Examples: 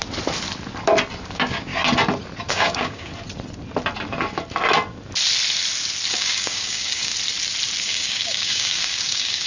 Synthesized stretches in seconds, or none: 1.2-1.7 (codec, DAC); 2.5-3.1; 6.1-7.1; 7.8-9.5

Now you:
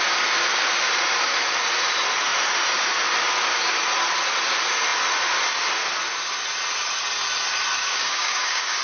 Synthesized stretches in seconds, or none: 7.8-8.8 (codec, DAC)